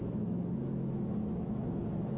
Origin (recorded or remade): remade